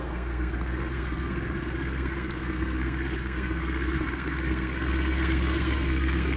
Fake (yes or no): yes